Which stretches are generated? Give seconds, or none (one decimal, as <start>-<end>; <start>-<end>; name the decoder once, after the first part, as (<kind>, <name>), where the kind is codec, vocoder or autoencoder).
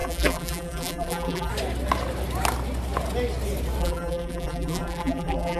0.0-1.5 (vocoder, BigVGAN v2); 3.8-5.6